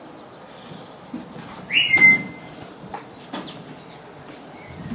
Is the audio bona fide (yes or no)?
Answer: yes